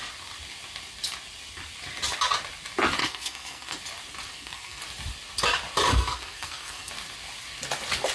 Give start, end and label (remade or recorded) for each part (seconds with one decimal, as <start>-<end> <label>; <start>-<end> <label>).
0.0-3.0 recorded; 3.0-3.8 remade; 3.8-4.3 recorded; 4.3-4.8 remade; 4.8-5.9 recorded; 5.9-6.9 remade; 6.9-8.1 recorded